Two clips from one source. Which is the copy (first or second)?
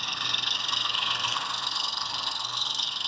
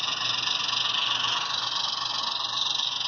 first